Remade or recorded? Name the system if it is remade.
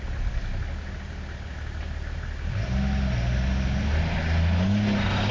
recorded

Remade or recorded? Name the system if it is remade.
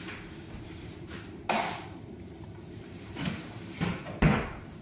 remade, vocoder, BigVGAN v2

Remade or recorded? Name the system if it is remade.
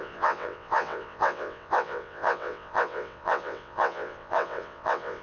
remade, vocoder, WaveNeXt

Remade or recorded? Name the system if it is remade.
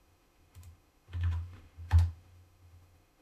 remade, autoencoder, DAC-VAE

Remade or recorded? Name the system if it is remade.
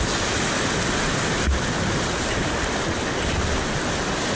recorded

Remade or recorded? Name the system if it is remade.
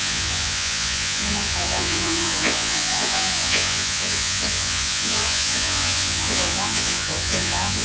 remade, vocoder, Vocos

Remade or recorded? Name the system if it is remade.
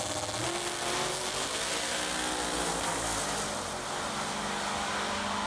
recorded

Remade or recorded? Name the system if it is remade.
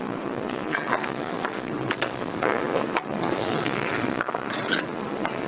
remade, vocoder, Vocos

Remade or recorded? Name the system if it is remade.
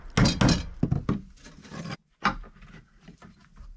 recorded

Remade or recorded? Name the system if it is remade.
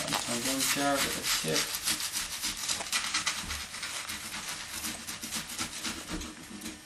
recorded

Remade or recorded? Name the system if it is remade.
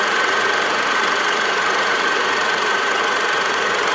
remade, vocoder, Vocos